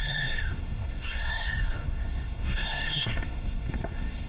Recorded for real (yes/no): no